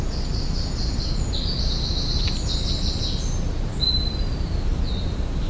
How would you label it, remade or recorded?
recorded